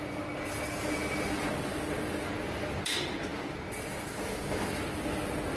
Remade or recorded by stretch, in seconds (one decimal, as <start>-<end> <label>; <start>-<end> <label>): 0.0-5.6 recorded